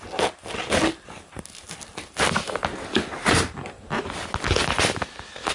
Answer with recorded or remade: recorded